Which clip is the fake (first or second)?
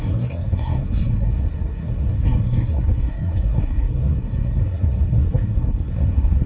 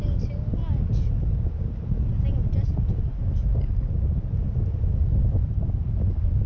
first